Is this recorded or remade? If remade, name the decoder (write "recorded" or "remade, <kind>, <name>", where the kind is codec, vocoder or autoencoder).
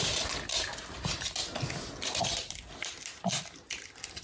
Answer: recorded